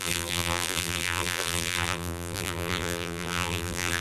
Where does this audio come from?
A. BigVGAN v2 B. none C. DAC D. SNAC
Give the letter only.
A